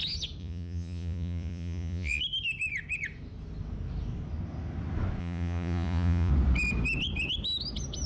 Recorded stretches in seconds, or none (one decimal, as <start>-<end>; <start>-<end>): 0.0-0.4; 2.2-5.2; 6.3-8.1